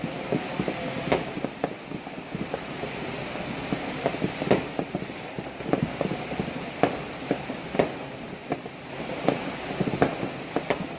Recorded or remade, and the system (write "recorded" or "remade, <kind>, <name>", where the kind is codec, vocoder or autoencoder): recorded